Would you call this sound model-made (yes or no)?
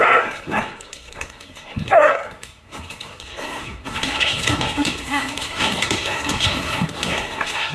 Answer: yes